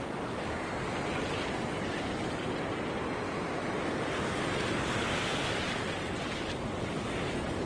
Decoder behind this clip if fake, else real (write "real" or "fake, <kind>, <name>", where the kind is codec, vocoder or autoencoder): real